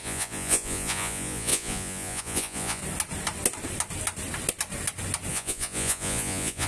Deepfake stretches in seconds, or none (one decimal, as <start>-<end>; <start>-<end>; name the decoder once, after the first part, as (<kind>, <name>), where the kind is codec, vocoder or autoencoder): 0.0-2.8 (vocoder, Vocos); 5.3-6.7